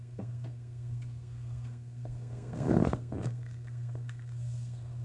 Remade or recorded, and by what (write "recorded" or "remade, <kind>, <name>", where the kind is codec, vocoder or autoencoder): remade, codec, SNAC